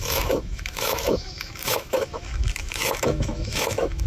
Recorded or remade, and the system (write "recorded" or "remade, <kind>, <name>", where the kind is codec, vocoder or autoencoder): remade, autoencoder, DAC-VAE